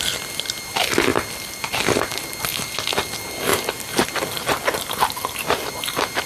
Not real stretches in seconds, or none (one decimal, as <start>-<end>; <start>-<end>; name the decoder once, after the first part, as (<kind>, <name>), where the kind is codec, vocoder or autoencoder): 1.1-2.4 (vocoder, BigVGAN v2); 3.5-5.7